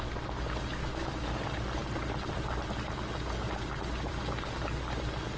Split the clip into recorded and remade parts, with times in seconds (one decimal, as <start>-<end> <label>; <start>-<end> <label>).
0.0-0.8 recorded; 0.8-1.3 remade; 1.3-5.4 recorded